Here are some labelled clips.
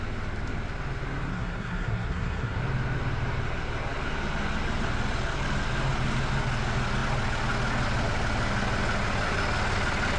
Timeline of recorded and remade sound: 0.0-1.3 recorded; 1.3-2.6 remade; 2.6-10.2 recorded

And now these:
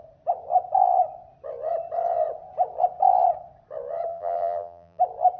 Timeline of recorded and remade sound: 0.0-4.1 recorded; 4.1-5.0 remade; 5.0-5.4 recorded

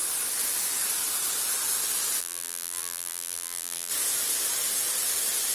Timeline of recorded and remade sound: 0.0-2.2 recorded; 2.2-3.9 remade; 3.9-5.5 recorded

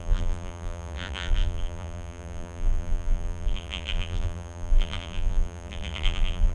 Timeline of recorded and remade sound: 0.0-6.5 remade

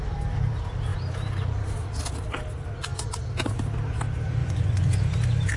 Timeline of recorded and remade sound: 0.0-4.4 recorded; 4.4-4.9 remade; 4.9-5.6 recorded

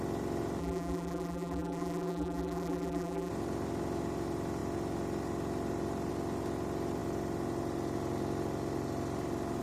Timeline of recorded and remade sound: 0.0-0.6 recorded; 0.6-3.3 remade; 3.3-9.6 recorded